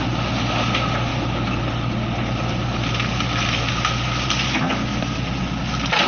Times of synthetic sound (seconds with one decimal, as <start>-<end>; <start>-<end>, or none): none